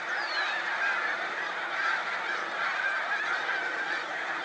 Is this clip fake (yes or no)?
yes